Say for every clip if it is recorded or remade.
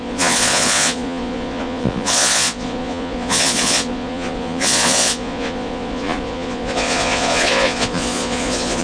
remade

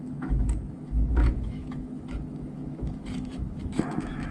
remade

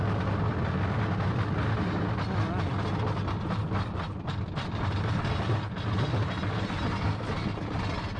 recorded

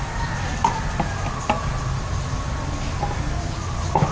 recorded